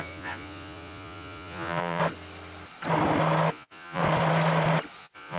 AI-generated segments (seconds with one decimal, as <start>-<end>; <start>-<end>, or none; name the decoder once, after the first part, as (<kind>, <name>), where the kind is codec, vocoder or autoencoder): 0.0-2.0 (vocoder, Vocos); 3.5-4.0; 5.0-5.4

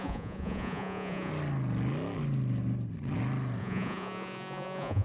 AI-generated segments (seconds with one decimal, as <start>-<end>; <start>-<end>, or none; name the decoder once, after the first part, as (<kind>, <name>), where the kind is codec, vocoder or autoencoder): 0.0-1.3 (vocoder, Vocos); 3.6-5.0

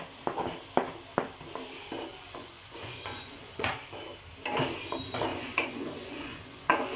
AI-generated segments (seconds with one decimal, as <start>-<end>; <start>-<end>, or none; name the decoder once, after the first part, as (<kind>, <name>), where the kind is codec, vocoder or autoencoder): 2.1-3.7 (vocoder, Vocos); 5.3-7.0

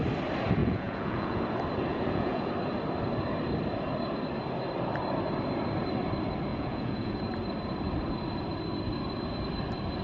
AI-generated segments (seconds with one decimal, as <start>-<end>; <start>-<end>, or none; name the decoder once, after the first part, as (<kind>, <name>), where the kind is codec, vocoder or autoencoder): 0.6-1.4 (vocoder, Vocos); 1.9-2.5; 6.5-7.2